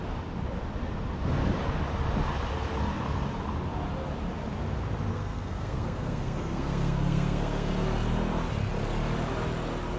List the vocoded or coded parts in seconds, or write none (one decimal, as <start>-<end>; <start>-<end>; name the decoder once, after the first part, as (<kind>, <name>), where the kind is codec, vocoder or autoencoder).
5.1-7.7 (codec, SNAC)